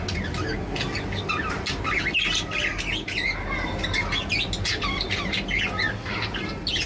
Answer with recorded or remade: recorded